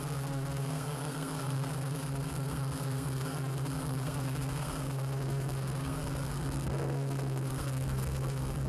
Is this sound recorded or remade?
remade